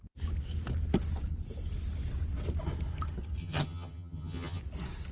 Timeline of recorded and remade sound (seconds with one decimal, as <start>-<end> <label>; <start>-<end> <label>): 0.0-3.4 recorded; 3.4-4.6 remade; 4.6-5.1 recorded